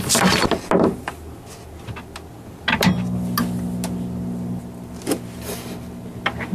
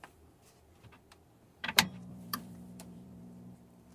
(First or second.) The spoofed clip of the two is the second